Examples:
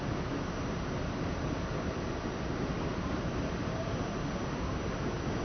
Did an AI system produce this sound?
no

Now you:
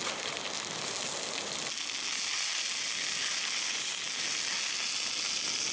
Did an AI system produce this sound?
no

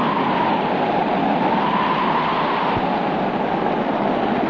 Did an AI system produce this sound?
no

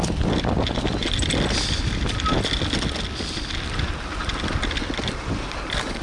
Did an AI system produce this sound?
no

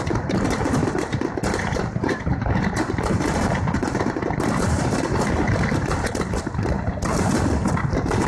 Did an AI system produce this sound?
yes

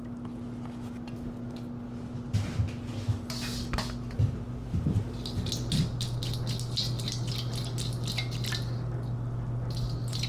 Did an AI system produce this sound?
no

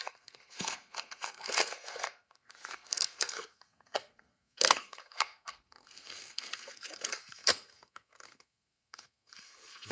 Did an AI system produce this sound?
yes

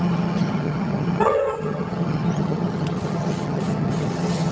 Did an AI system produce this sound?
yes